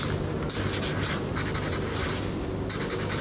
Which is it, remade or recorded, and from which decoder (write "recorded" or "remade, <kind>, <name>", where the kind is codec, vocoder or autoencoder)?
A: recorded